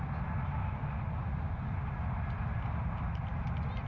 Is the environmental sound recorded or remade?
recorded